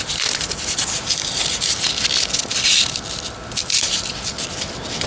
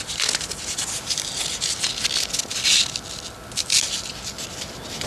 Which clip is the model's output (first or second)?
first